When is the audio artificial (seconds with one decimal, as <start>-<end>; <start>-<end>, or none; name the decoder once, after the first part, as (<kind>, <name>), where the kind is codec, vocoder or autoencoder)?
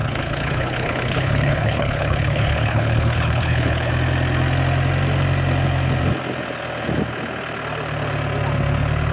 0.0-3.9 (codec, HILCodec)